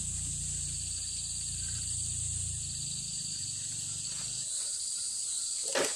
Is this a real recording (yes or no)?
yes